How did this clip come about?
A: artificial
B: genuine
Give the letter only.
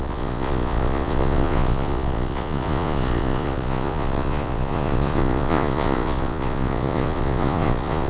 A